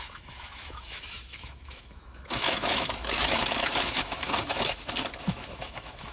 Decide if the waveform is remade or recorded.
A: remade